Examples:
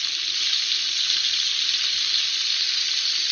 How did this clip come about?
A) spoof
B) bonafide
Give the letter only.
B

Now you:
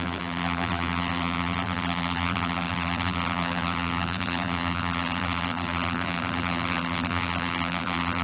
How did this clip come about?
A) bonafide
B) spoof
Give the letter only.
B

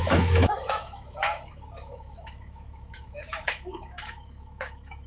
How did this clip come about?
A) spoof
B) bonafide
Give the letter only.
A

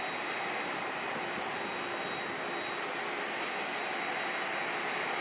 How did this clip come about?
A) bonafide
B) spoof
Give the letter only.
A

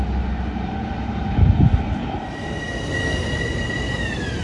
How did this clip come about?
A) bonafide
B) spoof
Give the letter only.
A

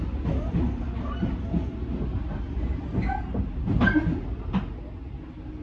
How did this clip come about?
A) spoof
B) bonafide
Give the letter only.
B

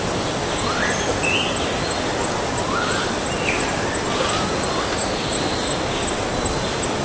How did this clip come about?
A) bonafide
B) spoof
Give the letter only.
A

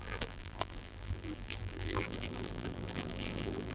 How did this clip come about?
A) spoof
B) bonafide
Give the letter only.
A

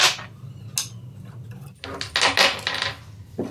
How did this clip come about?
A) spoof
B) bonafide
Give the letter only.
B